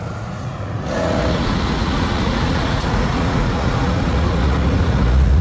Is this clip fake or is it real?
fake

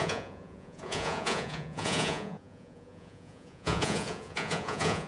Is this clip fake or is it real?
fake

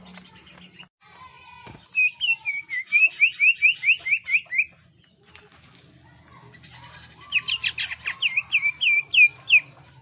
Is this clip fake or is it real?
real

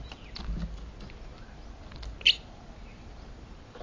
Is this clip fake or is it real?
real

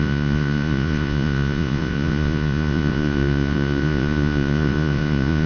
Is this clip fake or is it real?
fake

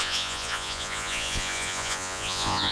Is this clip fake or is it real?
fake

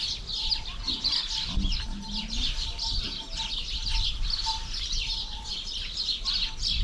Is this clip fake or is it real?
real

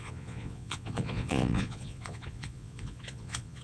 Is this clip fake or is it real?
fake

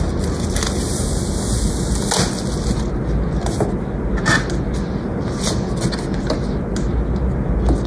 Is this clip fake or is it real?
real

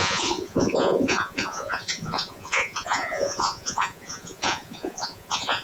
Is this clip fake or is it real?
fake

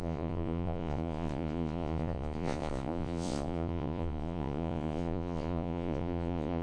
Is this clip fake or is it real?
fake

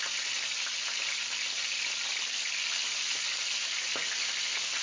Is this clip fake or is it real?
real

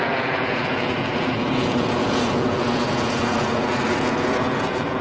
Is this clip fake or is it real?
fake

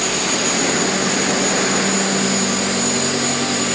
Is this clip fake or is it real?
real